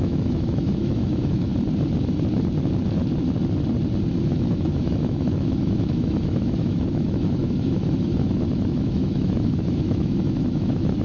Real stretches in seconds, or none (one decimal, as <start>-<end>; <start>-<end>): 1.5-4.2